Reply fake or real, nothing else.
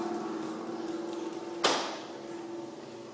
real